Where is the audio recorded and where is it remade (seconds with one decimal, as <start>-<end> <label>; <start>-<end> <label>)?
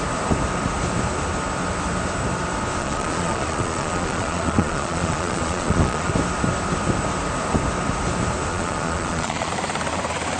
0.0-2.8 recorded; 2.8-6.1 remade; 6.1-8.5 recorded; 8.5-9.5 remade; 9.5-10.4 recorded